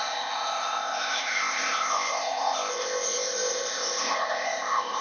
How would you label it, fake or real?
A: fake